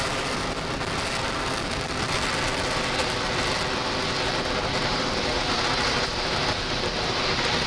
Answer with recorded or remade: recorded